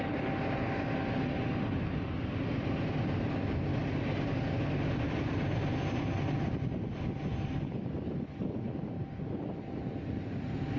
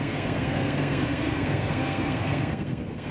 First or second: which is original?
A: first